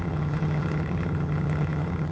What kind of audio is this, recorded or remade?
remade